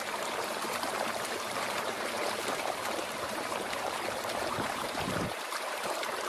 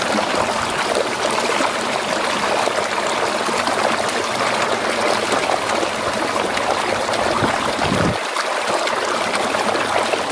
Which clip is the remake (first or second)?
first